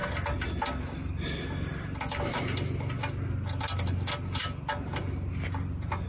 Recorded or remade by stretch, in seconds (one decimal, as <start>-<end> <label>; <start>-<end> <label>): 0.0-6.1 recorded